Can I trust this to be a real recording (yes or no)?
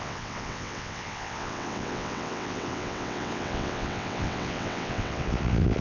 no